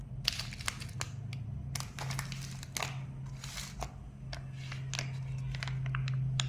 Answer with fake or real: real